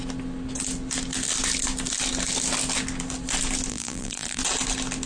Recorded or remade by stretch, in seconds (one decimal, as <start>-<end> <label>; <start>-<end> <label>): 0.0-3.7 recorded; 3.7-4.4 remade; 4.4-5.1 recorded